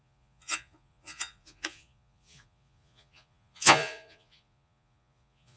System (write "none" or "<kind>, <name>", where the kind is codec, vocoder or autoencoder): vocoder, Vocos